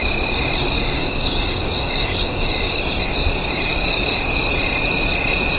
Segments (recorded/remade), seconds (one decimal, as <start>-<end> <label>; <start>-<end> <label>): 0.0-1.0 recorded; 1.0-2.8 remade; 2.8-3.7 recorded; 3.7-4.4 remade; 4.4-5.6 recorded